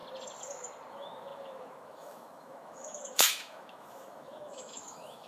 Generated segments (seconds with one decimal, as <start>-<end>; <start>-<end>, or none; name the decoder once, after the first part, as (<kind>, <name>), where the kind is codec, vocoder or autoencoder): 0.9-5.3 (autoencoder, DAC-VAE)